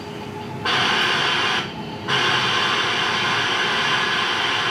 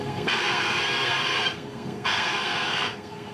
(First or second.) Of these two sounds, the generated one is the second